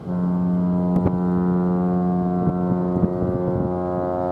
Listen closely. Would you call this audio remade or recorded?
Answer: recorded